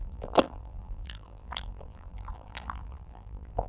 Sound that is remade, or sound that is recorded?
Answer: remade